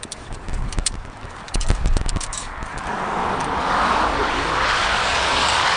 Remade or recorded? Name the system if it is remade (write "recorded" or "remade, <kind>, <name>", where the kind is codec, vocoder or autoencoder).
remade, codec, DAC